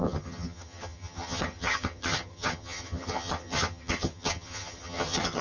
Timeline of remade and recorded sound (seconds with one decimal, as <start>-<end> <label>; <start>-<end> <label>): 0.0-5.4 remade